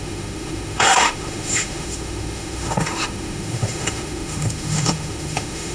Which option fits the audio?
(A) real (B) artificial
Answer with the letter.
B